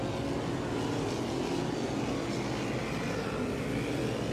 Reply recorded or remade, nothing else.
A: recorded